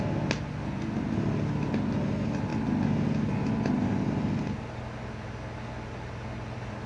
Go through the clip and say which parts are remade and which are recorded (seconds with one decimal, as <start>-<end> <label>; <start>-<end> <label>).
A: 0.0-6.9 recorded